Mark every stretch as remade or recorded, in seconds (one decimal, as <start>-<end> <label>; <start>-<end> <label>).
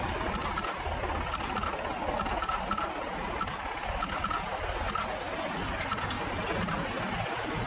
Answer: 0.0-7.7 recorded